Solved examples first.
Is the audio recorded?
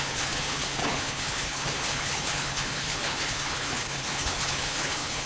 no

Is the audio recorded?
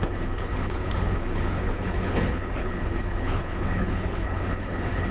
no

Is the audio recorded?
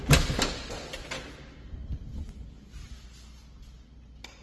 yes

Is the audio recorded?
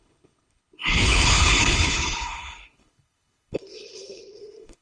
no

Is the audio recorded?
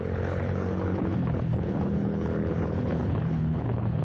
no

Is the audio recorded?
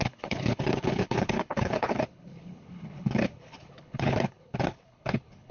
no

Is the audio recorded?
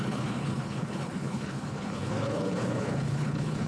no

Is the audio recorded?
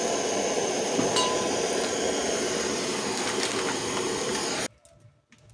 yes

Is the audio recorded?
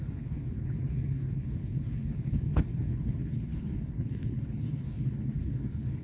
no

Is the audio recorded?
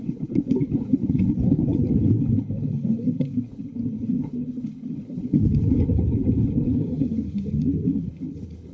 no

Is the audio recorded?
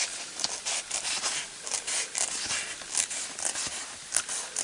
yes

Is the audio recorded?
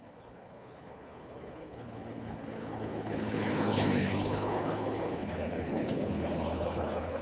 no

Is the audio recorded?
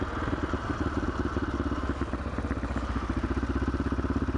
yes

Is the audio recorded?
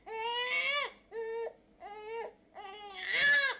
yes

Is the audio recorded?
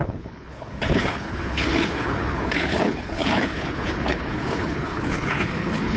no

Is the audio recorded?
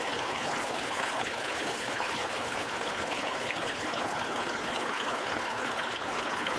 no